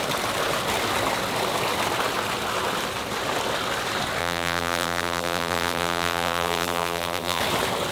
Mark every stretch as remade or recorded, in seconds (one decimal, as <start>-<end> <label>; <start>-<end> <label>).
0.0-4.2 recorded; 4.2-7.4 remade; 7.4-7.9 recorded